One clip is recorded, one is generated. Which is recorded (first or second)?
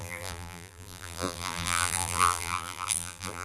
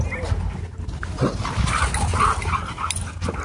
second